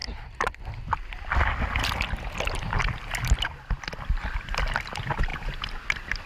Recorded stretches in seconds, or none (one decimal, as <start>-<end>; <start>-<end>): 0.0-6.3